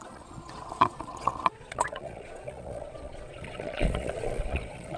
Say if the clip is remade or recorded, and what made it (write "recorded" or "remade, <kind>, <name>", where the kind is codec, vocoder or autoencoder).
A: remade, vocoder, Vocos